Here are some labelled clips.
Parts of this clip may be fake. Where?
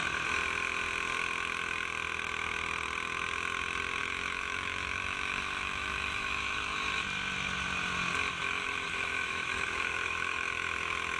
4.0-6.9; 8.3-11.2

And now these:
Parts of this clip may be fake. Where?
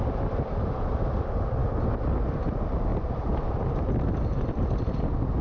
2.9-3.8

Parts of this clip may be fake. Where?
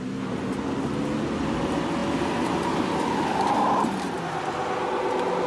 none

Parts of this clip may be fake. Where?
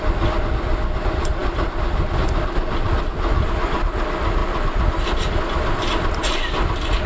none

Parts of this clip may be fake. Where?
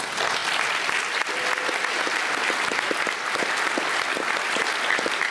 none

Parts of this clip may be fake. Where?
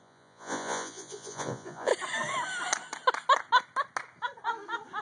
0.0-1.9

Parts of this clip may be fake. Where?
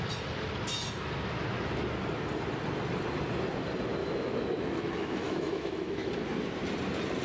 4.0-6.1